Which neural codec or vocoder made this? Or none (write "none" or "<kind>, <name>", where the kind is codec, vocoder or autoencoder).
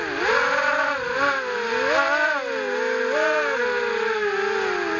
none